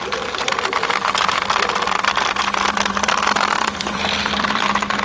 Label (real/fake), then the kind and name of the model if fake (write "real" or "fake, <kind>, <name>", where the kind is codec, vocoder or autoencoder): fake, vocoder, BigVGAN v2